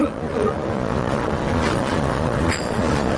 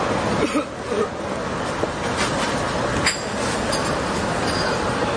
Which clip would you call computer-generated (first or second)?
first